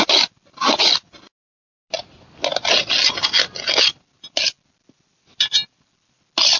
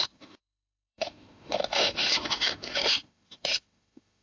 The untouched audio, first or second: first